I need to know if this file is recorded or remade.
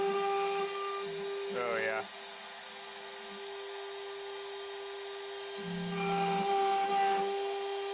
recorded